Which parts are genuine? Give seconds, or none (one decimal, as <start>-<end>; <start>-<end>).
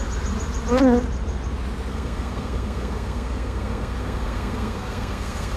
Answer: 0.0-1.9